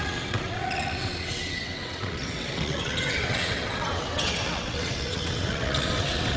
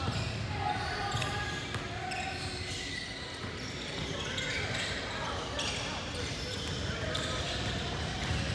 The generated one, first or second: first